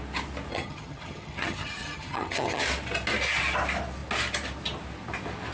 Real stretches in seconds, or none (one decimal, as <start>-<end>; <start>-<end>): 0.0-0.5; 2.6-5.5